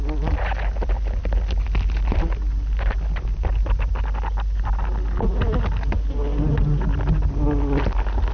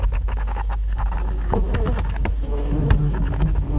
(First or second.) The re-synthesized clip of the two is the second